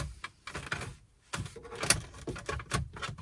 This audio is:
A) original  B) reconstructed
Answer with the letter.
A